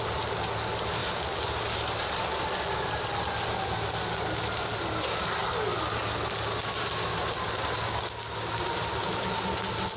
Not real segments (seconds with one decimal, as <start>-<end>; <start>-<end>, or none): none